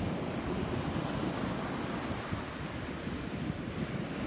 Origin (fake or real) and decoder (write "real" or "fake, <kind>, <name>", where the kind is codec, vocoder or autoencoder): real